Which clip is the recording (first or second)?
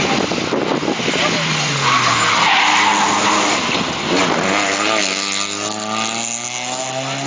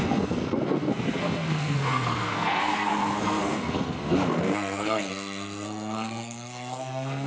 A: first